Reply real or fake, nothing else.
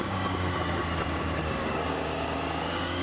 fake